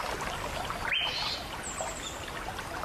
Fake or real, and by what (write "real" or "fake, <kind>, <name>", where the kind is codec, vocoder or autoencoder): real